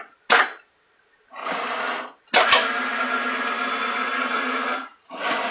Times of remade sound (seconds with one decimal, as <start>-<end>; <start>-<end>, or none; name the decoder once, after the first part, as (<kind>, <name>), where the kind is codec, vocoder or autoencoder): 4.1-5.5 (vocoder, Vocos)

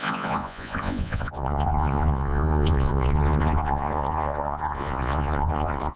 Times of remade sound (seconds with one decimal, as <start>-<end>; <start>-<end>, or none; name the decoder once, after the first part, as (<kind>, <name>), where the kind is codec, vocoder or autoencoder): 0.0-6.0 (vocoder, Vocos)

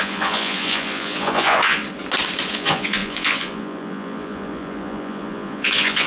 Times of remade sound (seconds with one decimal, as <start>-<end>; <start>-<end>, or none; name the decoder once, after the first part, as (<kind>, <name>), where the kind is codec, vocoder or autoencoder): 0.0-1.8 (vocoder, Vocos); 2.5-6.1

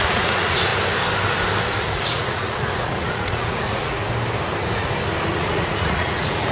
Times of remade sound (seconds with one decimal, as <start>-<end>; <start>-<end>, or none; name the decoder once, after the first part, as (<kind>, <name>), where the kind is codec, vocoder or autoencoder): 0.0-0.7 (vocoder, Vocos); 1.8-4.0; 5.3-6.5

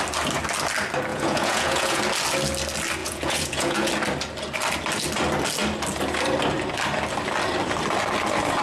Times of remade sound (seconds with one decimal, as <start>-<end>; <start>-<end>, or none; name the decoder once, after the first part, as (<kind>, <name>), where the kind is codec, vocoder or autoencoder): 1.1-2.0 (vocoder, Vocos); 3.0-3.9

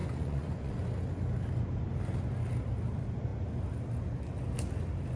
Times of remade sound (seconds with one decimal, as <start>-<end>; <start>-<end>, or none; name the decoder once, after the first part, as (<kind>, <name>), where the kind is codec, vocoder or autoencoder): 0.0-0.7 (vocoder, Vocos)

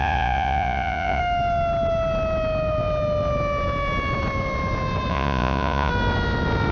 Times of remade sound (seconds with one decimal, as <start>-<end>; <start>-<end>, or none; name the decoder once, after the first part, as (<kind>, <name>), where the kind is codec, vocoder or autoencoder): 0.0-1.2 (vocoder, Vocos); 5.1-5.9